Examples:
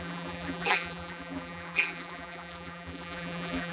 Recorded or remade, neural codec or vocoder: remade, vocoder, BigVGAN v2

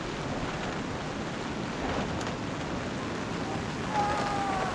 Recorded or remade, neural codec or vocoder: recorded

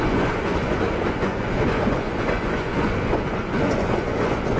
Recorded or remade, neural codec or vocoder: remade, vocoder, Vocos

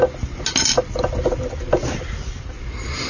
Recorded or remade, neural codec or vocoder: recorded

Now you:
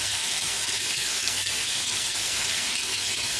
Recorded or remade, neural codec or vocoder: remade, codec, SNAC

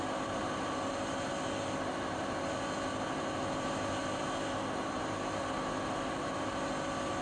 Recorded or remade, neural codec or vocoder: recorded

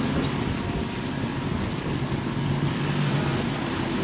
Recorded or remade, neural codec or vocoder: recorded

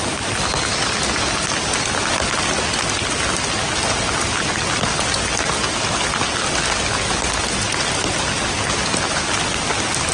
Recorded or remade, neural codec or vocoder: recorded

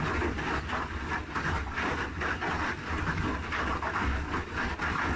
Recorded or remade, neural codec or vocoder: recorded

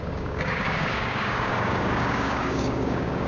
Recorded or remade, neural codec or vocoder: remade, codec, DAC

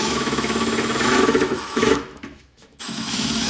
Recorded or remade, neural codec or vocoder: remade, autoencoder, DAC-VAE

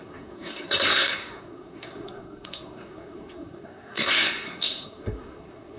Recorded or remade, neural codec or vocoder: remade, codec, SNAC